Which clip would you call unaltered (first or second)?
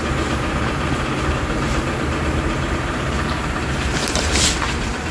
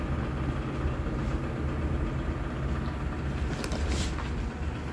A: second